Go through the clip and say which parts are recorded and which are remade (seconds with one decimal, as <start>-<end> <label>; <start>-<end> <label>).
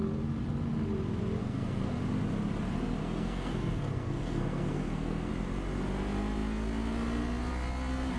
0.0-1.4 recorded; 1.4-2.0 remade; 2.0-3.0 recorded; 3.0-5.3 remade; 5.3-8.2 recorded